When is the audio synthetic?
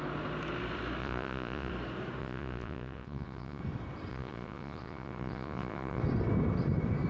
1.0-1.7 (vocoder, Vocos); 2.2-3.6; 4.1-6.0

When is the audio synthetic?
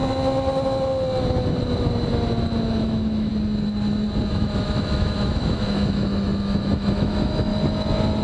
2.8-3.3 (autoencoder, DAC-VAE); 4.3-7.5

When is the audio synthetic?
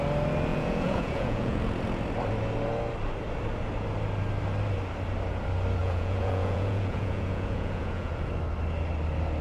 0.5-1.6 (vocoder, Vocos); 5.8-8.3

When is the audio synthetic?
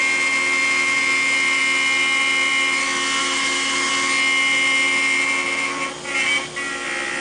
3.2-3.9 (autoencoder, DAC-VAE)